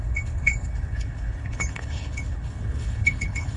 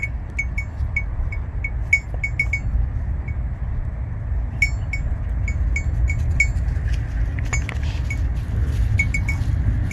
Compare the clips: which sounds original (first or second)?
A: second